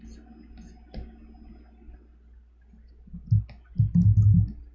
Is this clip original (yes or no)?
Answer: yes